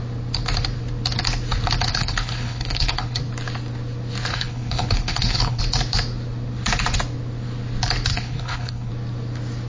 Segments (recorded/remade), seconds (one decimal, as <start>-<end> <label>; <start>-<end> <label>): 0.0-1.9 recorded; 1.9-3.2 remade; 3.2-4.3 recorded; 4.3-5.6 remade; 5.6-8.1 recorded; 8.1-8.9 remade; 8.9-9.7 recorded